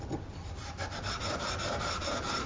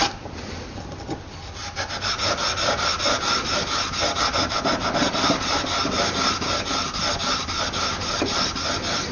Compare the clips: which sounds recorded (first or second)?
second